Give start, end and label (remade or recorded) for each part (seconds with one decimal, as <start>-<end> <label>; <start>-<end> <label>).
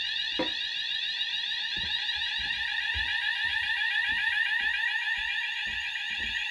0.0-6.5 recorded